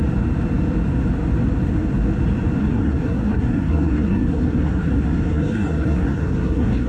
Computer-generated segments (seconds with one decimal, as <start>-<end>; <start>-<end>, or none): 2.6-6.9